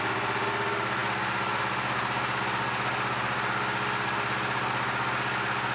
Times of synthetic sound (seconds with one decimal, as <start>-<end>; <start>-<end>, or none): none